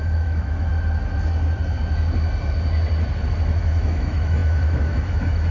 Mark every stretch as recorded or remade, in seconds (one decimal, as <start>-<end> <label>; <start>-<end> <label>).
0.0-0.7 remade; 0.7-3.6 recorded; 3.6-5.5 remade